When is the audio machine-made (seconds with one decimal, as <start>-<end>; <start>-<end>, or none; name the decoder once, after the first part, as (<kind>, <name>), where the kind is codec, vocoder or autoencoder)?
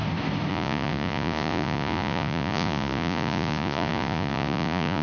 0.5-5.0 (vocoder, Vocos)